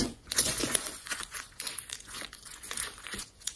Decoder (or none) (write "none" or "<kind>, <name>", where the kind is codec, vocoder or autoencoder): vocoder, Vocos